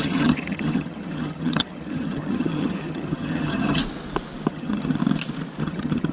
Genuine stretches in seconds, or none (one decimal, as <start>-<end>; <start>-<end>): 3.8-4.5; 5.0-5.6